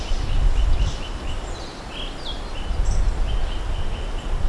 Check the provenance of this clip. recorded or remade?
recorded